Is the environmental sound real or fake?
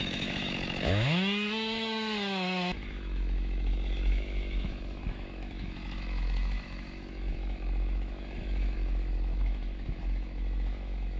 fake